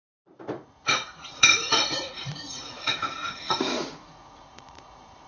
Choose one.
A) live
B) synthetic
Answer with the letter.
B